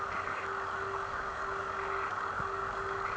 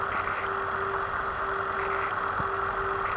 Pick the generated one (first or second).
first